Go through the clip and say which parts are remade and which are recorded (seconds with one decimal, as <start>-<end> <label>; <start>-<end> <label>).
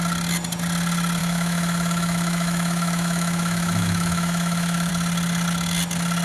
0.0-1.2 recorded; 1.2-4.9 remade; 4.9-6.2 recorded